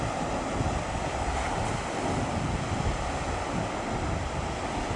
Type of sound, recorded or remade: recorded